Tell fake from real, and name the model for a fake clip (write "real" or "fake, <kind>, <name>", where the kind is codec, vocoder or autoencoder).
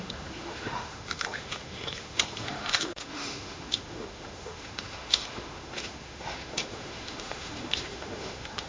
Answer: fake, autoencoder, DAC-VAE